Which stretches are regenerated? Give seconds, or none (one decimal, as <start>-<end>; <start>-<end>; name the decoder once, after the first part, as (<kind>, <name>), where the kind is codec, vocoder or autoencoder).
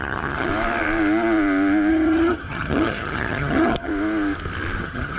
0.0-0.5 (vocoder, HiFi-GAN); 1.9-3.9; 4.8-5.2